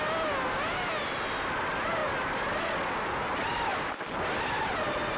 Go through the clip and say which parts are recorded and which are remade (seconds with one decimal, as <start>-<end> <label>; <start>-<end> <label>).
0.0-5.2 recorded